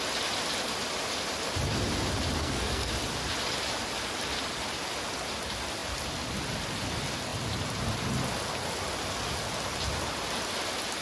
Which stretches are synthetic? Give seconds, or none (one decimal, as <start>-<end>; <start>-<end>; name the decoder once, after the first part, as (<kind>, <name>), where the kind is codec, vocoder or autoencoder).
2.4-2.9 (codec, SNAC)